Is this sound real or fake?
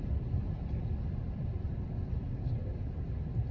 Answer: real